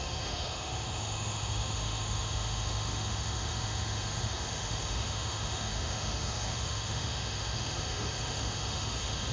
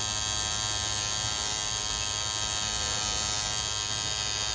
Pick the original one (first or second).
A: second